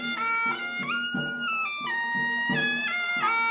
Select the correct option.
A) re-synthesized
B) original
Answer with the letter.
B